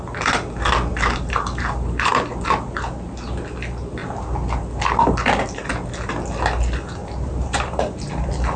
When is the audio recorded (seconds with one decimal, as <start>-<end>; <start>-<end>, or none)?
0.0-0.9; 2.1-7.0; 8.1-8.6